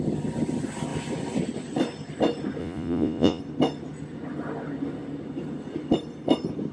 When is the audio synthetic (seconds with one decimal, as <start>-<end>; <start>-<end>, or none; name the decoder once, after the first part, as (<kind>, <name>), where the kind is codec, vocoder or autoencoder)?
2.6-3.4 (vocoder, Vocos)